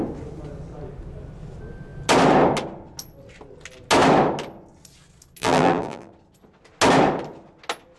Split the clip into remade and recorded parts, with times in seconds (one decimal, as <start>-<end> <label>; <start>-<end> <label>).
0.0-5.4 recorded; 5.4-6.1 remade; 6.1-8.0 recorded